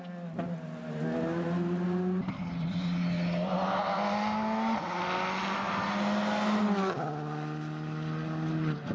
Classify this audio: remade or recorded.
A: recorded